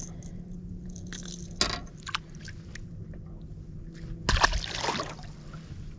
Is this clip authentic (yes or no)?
yes